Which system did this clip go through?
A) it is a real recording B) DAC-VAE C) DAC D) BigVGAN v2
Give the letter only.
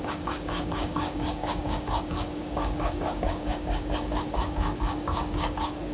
C